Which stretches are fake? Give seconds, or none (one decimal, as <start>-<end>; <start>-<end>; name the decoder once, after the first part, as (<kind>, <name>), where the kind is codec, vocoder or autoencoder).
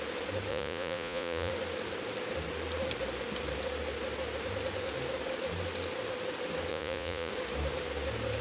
0.5-1.5 (vocoder, Vocos); 6.7-7.3